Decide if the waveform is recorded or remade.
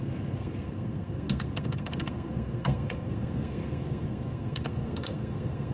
remade